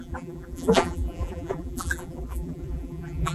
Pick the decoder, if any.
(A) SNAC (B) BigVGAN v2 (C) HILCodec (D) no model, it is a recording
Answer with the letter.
B